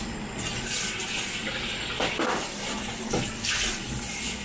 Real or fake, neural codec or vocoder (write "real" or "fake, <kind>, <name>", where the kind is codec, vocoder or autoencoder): real